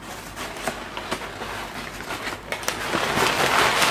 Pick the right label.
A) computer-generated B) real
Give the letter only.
B